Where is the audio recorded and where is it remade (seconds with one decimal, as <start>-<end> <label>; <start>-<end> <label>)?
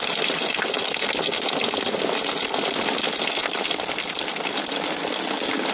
0.0-5.7 recorded